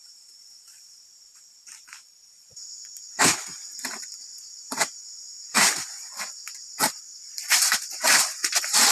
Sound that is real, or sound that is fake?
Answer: fake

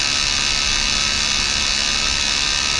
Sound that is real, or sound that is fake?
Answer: fake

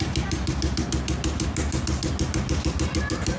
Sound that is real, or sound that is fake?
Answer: real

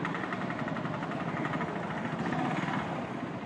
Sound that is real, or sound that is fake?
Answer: fake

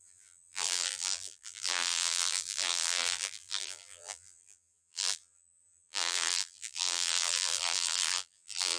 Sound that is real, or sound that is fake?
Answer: fake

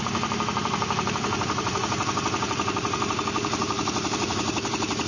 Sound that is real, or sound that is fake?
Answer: fake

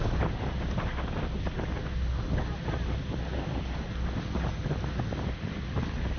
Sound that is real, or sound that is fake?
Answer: real